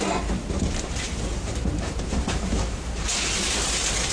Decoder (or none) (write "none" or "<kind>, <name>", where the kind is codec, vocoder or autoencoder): vocoder, BigVGAN v2